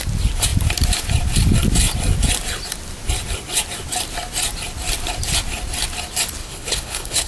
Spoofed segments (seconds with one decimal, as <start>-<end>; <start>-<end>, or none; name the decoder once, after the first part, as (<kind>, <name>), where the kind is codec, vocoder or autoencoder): 6.4-7.3 (codec, HILCodec)